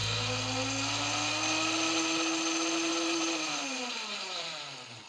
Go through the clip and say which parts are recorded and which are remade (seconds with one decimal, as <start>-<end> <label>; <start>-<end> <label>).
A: 0.0-2.9 recorded; 2.9-5.1 remade